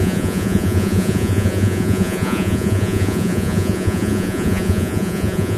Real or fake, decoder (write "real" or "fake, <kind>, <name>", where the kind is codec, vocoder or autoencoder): fake, vocoder, Vocos